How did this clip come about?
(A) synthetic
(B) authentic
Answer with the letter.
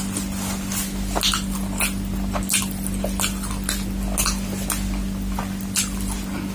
B